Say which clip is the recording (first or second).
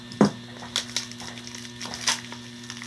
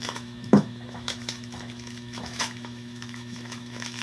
first